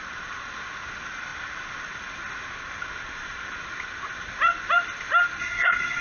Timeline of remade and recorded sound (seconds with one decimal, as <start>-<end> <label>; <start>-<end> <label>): 0.0-5.4 recorded; 5.4-6.0 remade